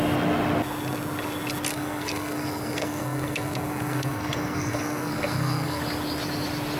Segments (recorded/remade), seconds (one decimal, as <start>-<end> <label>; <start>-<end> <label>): 0.0-1.7 recorded; 1.7-5.8 remade; 5.8-6.8 recorded